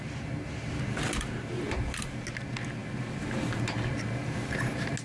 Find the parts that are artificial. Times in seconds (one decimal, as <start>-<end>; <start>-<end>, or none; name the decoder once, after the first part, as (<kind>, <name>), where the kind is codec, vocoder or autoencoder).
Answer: none